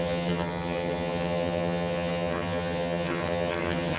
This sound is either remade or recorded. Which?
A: remade